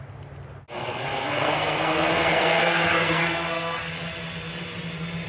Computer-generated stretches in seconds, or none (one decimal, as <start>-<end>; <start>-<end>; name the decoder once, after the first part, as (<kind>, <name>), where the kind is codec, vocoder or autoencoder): 0.8-3.9 (codec, SNAC)